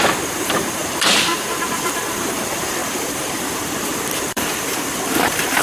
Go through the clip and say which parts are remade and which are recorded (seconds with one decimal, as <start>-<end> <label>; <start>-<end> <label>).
0.0-5.6 remade